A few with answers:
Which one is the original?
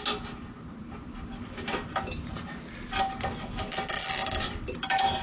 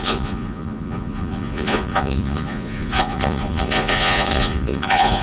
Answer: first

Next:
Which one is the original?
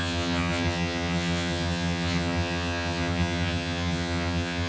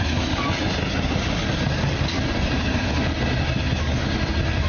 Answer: second